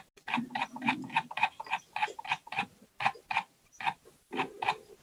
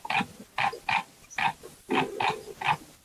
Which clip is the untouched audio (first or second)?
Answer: second